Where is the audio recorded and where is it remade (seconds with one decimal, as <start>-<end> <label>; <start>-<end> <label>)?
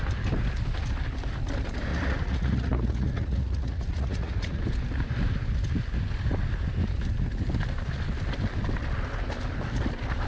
0.0-1.9 recorded; 1.9-4.6 remade; 4.6-10.3 recorded